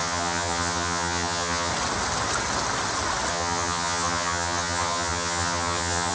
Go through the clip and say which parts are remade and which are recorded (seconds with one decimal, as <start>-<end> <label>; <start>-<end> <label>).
0.0-1.7 remade; 1.7-3.3 recorded; 3.3-6.1 remade